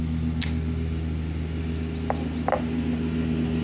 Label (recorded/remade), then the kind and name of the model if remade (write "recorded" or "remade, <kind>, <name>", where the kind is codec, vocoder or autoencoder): recorded